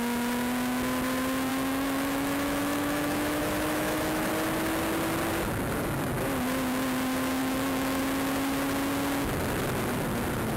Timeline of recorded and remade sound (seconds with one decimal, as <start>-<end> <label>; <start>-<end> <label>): 0.0-1.5 recorded; 1.5-4.3 remade; 4.3-7.4 recorded; 7.4-8.0 remade; 8.0-10.6 recorded